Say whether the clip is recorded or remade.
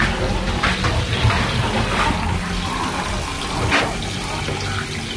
recorded